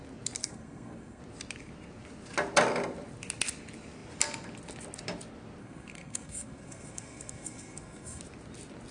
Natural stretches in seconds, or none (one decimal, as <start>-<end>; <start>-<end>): 0.0-0.4; 1.2-5.6; 8.2-8.9